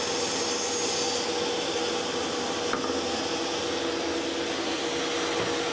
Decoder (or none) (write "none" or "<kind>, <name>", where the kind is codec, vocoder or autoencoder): none